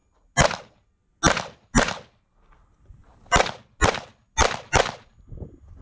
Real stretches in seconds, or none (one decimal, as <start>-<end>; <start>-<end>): 0.0-5.8